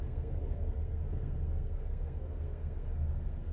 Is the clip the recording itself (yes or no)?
no